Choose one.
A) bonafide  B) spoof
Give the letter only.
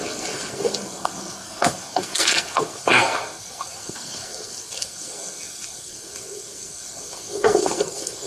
B